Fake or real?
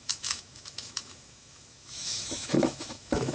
fake